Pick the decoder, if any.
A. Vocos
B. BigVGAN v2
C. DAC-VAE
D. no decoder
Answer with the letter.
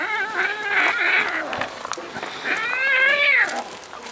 D